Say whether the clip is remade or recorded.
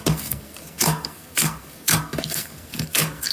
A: remade